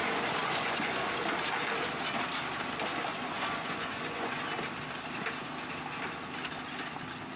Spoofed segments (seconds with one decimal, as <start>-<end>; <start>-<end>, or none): 0.0-1.1; 3.1-4.4